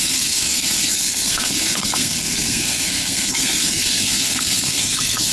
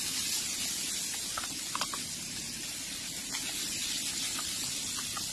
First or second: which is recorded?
second